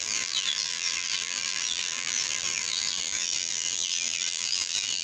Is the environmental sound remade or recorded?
remade